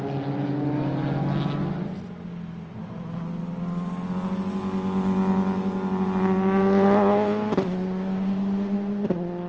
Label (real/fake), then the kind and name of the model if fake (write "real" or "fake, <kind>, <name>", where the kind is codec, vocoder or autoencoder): real